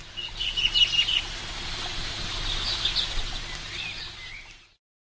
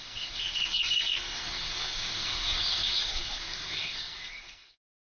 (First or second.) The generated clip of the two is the second